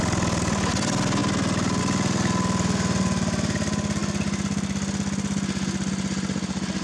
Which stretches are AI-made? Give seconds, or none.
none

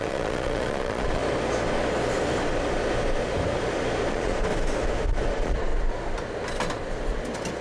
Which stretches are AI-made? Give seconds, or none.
0.0-1.2 (vocoder, Vocos); 4.1-4.5; 5.3-5.7

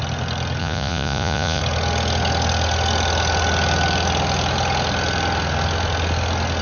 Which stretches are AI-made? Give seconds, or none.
0.6-1.6 (vocoder, Vocos)

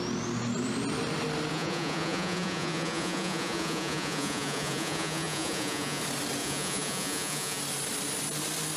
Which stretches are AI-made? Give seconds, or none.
1.5-6.0 (vocoder, Vocos); 6.4-7.6